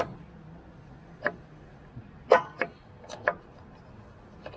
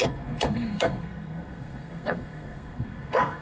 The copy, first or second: second